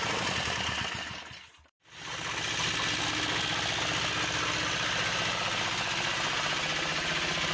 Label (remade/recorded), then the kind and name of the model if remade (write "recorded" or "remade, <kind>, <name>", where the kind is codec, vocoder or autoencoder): recorded